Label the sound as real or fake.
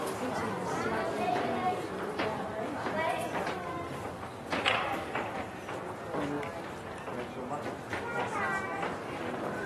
real